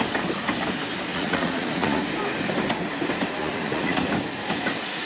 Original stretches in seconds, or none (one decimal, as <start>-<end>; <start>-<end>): 0.0-1.1; 2.0-3.4; 4.0-5.1